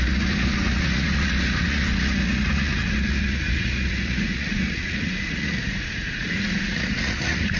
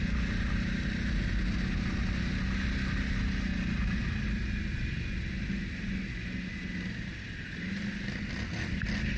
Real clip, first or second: second